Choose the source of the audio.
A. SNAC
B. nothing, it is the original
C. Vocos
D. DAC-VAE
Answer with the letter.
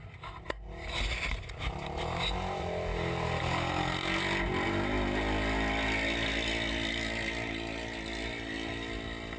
B